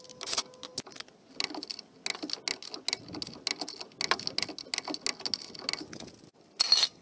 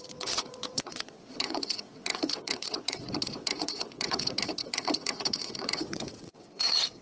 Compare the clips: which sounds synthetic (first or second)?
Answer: second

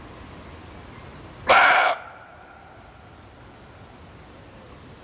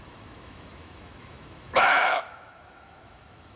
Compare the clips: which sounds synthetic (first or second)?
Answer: second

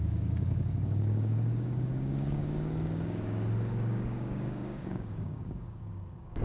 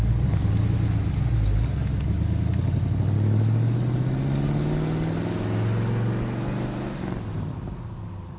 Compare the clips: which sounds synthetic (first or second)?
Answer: first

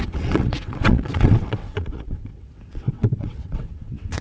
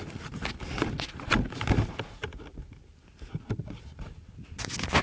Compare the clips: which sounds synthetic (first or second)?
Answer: first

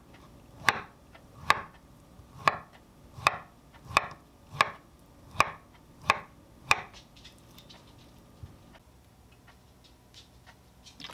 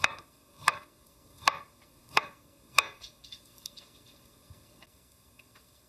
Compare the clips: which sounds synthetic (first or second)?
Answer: second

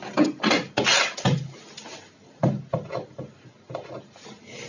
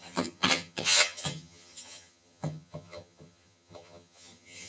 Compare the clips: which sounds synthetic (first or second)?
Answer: second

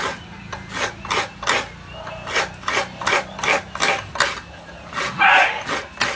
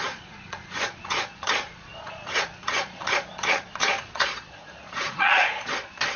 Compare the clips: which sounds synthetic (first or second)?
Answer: second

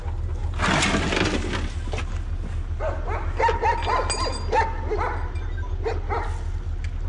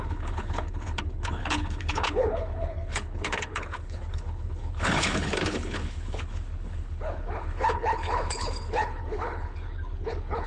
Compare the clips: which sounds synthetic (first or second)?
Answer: second